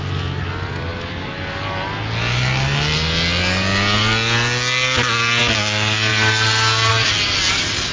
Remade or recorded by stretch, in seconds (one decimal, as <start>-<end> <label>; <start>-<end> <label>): 0.0-7.9 recorded